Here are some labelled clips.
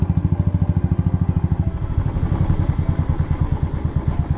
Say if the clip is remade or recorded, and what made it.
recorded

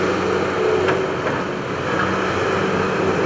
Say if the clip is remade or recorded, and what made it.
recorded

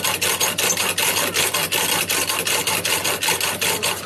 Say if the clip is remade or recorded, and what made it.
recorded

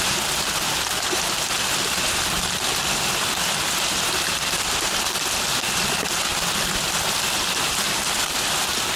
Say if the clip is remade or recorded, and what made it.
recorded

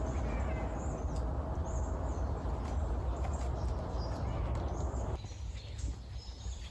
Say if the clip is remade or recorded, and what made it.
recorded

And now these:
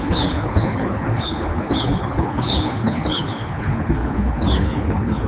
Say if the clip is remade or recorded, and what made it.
remade, codec, HILCodec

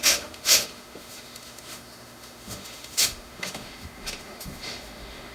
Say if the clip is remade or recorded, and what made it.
remade, autoencoder, DAC-VAE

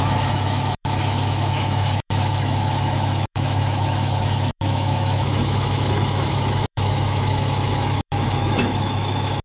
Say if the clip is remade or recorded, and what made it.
remade, autoencoder, DAC-VAE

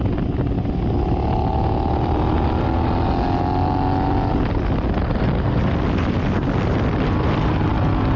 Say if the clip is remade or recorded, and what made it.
recorded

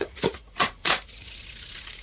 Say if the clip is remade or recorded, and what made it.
remade, vocoder, Vocos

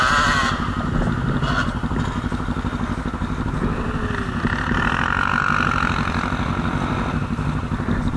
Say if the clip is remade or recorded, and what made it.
recorded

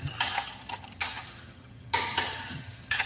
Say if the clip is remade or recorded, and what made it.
remade, vocoder, HiFi-GAN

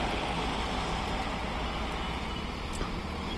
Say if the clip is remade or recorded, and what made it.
recorded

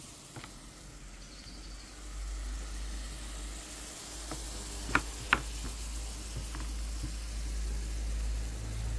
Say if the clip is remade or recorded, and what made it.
recorded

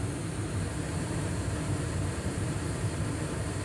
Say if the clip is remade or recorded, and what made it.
remade, vocoder, BigVGAN v2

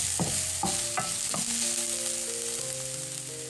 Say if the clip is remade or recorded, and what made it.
recorded